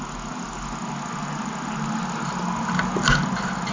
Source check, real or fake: real